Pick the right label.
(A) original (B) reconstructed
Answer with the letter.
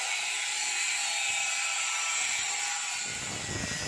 A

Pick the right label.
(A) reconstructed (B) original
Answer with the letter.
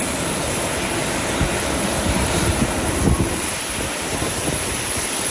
A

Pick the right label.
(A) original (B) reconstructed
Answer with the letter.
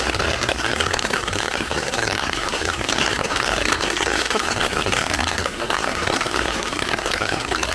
B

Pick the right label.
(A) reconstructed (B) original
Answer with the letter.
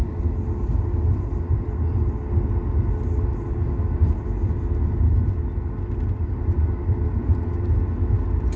B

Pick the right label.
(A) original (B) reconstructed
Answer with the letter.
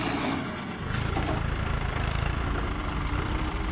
B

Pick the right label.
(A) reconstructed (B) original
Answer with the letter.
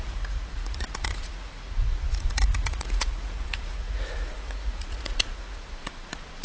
A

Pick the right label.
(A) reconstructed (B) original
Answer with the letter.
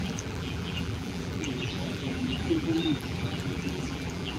A